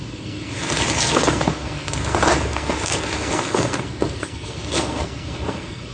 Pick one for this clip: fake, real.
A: fake